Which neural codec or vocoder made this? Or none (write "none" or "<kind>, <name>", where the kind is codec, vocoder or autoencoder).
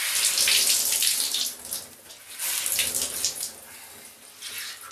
none